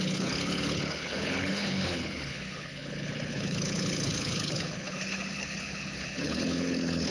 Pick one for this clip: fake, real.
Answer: fake